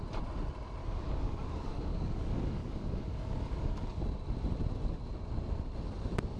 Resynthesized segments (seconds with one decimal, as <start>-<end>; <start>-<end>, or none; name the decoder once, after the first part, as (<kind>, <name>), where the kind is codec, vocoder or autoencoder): 0.8-4.0 (codec, DAC)